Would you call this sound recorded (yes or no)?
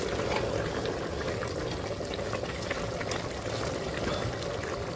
yes